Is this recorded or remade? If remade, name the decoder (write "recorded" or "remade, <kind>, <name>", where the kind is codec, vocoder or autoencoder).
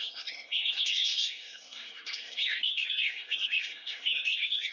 remade, codec, SNAC